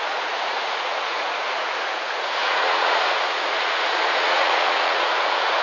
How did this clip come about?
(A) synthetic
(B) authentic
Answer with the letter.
A